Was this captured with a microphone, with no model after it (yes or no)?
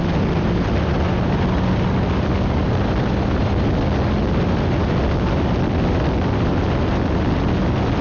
yes